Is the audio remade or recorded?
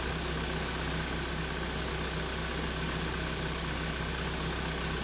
recorded